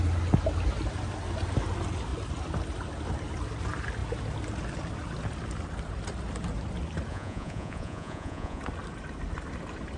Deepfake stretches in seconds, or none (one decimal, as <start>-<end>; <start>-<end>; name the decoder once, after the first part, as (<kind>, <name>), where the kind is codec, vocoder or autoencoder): 7.1-8.6 (vocoder, Vocos)